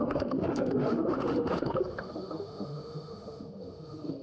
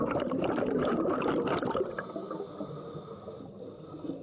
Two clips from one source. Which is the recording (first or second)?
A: second